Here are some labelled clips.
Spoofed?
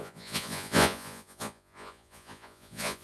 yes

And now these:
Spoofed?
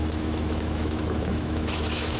yes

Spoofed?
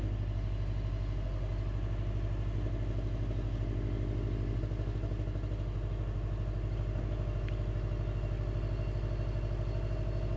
no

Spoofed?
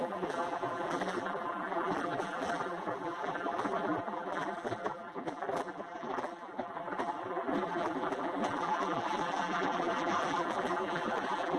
yes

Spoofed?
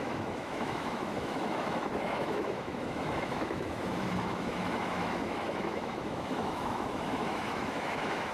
yes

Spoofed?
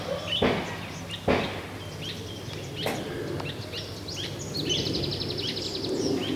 no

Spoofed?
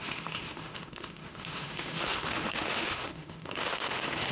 yes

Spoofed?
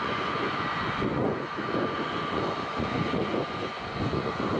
yes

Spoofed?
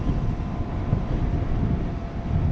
no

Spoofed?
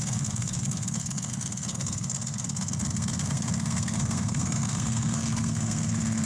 yes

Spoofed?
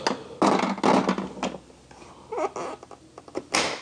no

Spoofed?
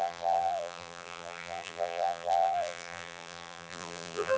yes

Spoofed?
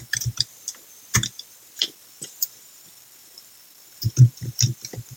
yes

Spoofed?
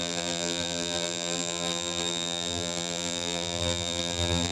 yes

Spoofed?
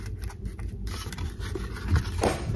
yes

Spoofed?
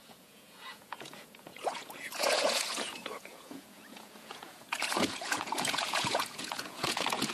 yes